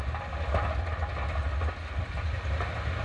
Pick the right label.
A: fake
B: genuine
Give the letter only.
B